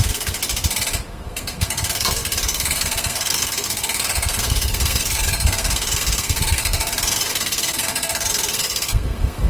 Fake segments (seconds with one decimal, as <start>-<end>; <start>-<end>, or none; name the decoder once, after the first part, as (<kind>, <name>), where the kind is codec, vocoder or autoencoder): 0.0-0.4 (codec, SNAC); 1.1-9.5